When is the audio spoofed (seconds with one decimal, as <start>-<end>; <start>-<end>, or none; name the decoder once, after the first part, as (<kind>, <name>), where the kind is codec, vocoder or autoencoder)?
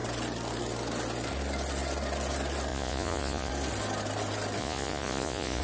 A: 2.7-3.5 (vocoder, Vocos); 4.6-5.6